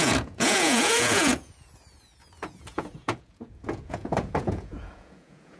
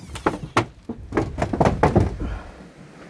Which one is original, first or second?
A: second